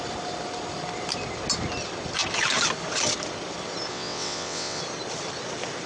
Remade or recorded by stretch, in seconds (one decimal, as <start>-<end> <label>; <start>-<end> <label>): 0.0-3.9 recorded; 3.9-4.8 remade; 4.8-5.9 recorded